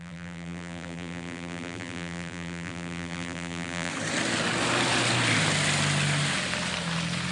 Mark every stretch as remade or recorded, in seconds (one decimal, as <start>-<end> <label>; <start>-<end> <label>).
0.0-3.9 remade; 3.9-7.3 recorded